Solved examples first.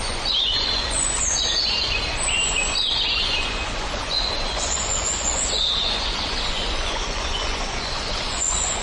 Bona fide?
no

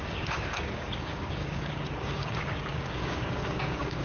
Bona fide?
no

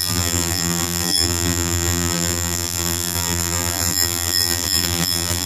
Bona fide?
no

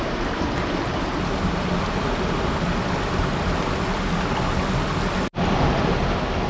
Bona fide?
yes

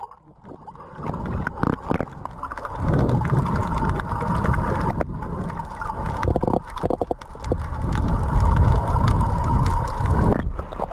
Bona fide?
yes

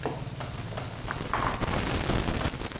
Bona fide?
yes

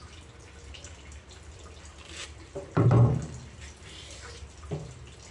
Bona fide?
yes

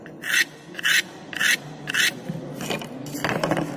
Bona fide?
yes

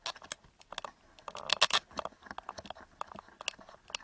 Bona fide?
yes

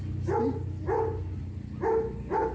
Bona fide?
yes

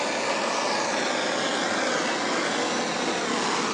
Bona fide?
yes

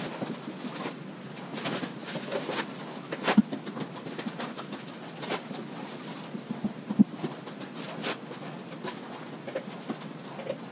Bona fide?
yes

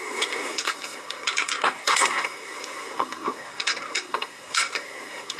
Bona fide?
no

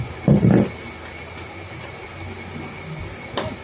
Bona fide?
yes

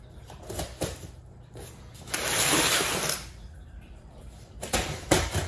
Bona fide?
no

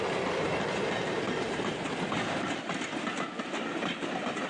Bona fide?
yes